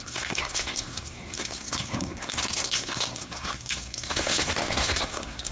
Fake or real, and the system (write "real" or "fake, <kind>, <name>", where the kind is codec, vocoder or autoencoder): fake, codec, SNAC